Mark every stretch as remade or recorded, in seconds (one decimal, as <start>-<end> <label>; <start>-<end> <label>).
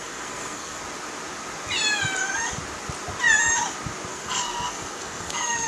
0.0-0.8 remade; 0.8-4.1 recorded; 4.1-5.7 remade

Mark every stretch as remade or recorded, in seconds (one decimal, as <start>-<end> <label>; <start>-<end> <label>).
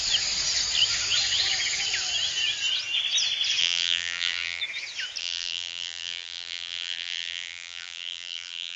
0.0-3.6 recorded; 3.6-4.6 remade; 4.6-5.2 recorded; 5.2-8.8 remade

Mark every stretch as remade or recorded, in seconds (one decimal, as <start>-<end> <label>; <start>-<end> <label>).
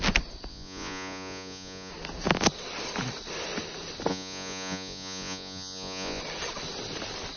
0.0-0.5 recorded; 0.5-1.9 remade; 1.9-4.1 recorded; 4.1-6.2 remade; 6.2-7.4 recorded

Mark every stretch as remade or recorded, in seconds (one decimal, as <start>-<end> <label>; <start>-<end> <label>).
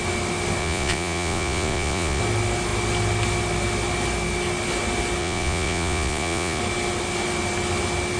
0.0-0.6 recorded; 0.6-2.2 remade; 2.2-5.2 recorded; 5.2-6.6 remade; 6.6-8.2 recorded